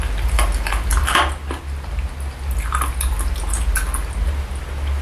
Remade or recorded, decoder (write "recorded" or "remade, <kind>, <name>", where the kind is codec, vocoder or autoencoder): recorded